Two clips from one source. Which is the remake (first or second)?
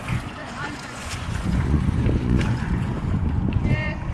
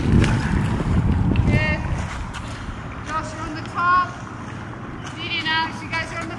first